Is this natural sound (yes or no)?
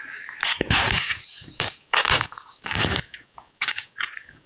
no